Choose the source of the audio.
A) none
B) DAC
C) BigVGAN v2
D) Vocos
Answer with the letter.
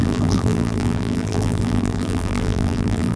C